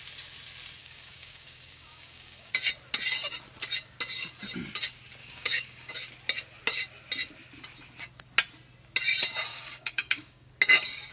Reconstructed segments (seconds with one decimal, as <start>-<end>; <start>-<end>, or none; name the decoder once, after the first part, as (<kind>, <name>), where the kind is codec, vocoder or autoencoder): 0.8-2.5 (codec, DAC); 5.2-5.9; 9.5-10.5